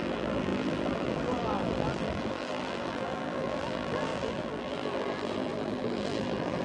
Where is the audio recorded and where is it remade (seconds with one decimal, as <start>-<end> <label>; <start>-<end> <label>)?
0.0-6.6 remade